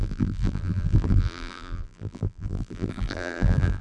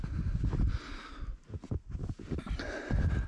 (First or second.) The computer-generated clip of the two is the first